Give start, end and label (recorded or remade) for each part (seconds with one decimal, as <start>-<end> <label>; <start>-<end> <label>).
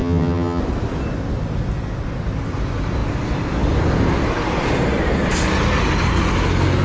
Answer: 0.0-0.6 remade; 0.6-6.8 recorded